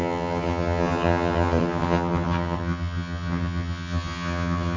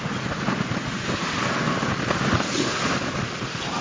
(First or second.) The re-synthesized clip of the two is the first